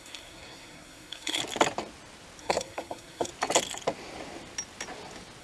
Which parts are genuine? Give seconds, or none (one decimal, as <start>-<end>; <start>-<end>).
1.4-2.4; 3.3-5.4